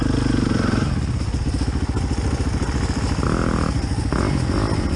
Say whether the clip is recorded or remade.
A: recorded